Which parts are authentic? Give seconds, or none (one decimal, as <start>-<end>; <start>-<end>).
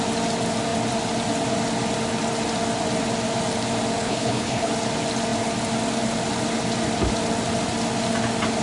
0.0-4.0; 4.7-8.6